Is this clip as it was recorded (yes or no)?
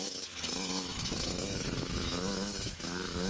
no